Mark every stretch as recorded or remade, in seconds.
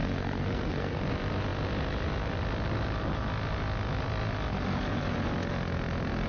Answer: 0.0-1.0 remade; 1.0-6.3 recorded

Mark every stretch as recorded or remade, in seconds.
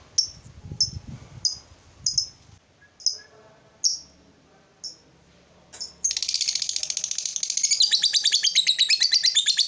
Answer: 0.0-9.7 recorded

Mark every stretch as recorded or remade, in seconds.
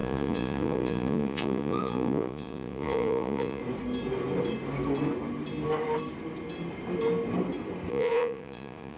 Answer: 0.0-3.6 remade; 3.6-7.9 recorded; 7.9-9.0 remade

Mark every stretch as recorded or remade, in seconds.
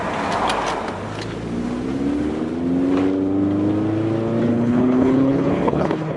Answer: 0.0-4.5 recorded; 4.5-6.2 remade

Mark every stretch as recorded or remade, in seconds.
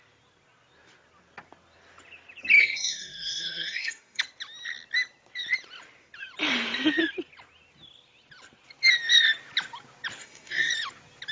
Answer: 0.0-2.6 recorded; 2.6-4.2 remade; 4.2-10.2 recorded; 10.2-10.7 remade; 10.7-11.3 recorded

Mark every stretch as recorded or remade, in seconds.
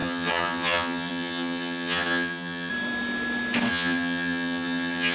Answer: 0.0-2.7 remade; 2.7-3.7 recorded; 3.7-5.1 remade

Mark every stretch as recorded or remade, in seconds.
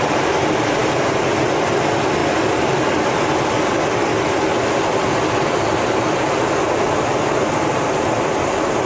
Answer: 0.0-8.9 recorded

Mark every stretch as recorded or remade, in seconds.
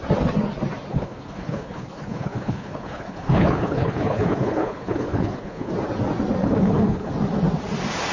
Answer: 0.0-0.9 recorded; 0.9-5.7 remade; 5.7-6.4 recorded; 6.4-7.1 remade; 7.1-8.1 recorded